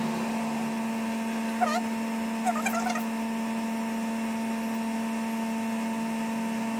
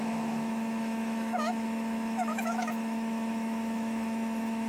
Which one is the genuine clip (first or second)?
first